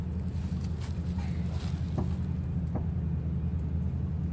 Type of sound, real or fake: real